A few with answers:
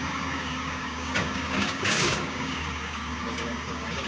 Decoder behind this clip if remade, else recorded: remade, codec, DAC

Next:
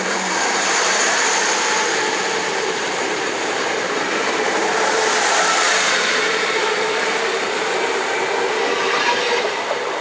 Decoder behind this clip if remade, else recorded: remade, vocoder, BigVGAN v2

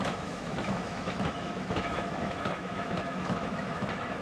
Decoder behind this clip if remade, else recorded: remade, autoencoder, DAC-VAE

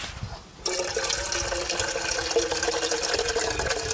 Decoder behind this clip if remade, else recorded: recorded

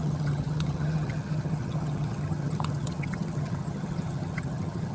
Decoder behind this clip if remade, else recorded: remade, vocoder, HiFi-GAN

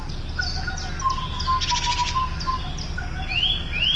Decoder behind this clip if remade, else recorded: recorded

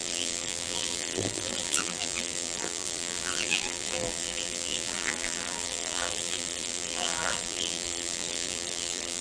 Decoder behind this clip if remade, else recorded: remade, vocoder, BigVGAN v2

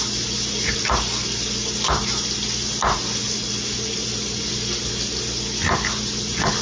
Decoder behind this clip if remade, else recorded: recorded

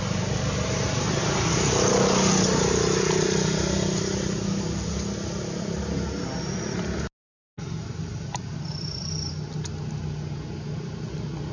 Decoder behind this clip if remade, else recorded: recorded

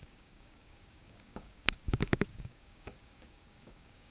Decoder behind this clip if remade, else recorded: remade, codec, DAC